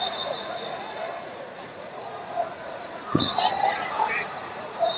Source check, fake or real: fake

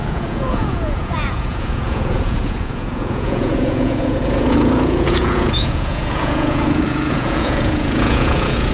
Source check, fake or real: fake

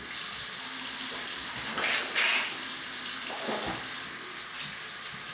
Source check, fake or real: real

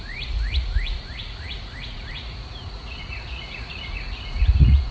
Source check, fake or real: fake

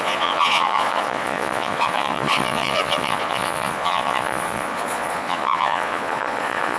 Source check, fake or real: fake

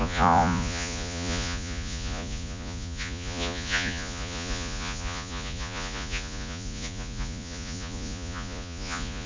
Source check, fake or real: fake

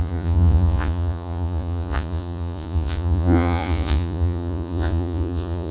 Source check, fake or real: fake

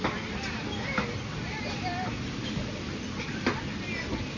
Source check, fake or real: real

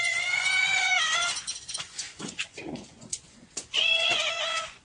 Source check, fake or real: fake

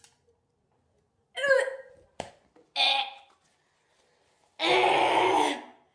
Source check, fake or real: real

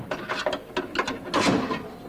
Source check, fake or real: real